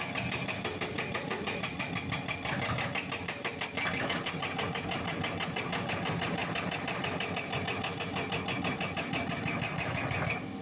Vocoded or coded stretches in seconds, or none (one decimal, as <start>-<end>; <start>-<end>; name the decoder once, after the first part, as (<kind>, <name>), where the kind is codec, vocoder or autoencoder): 0.9-1.9 (vocoder, Vocos)